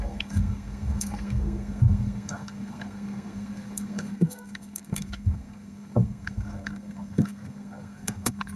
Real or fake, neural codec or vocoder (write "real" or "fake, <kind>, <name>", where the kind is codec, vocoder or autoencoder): fake, codec, SNAC